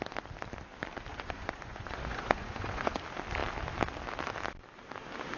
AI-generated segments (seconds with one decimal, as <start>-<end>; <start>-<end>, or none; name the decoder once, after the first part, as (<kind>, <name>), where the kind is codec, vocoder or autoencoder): 1.1-3.0 (vocoder, Vocos)